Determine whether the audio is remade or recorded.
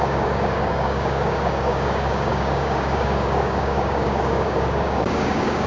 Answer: remade